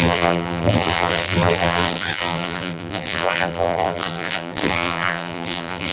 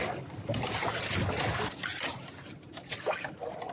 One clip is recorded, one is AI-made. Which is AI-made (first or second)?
first